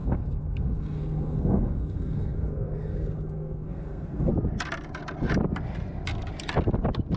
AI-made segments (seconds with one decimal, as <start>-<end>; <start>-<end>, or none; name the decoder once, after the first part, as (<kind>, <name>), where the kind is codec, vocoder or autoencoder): 0.0-4.3 (codec, SNAC)